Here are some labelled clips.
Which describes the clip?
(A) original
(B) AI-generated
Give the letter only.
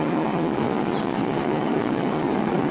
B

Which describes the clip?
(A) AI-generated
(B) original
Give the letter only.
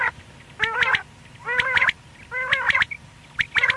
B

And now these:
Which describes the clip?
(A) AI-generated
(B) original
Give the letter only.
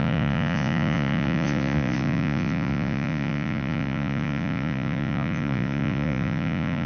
A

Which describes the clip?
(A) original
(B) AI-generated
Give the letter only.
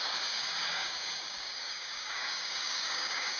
B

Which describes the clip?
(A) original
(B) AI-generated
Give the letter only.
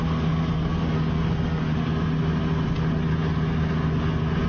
A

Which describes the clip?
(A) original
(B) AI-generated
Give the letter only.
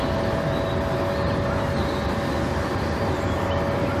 A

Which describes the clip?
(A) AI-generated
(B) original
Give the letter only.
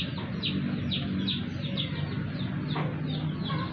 B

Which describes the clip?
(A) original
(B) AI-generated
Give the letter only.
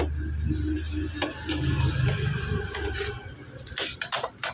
A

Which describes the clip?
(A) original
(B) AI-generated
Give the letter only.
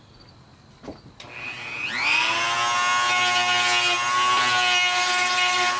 A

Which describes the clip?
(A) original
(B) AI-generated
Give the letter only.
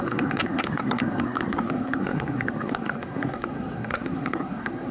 B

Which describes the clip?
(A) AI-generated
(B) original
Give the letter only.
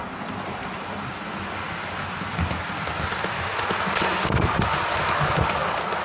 B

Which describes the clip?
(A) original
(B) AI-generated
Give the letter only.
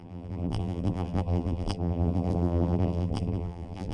B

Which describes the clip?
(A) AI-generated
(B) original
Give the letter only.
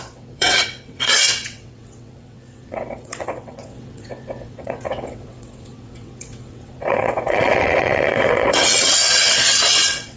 A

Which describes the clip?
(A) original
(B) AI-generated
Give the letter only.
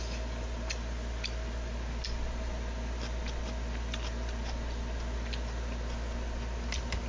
A